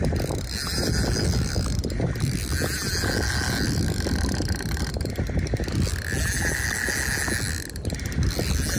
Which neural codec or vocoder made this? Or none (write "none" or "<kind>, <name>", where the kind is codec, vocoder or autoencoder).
none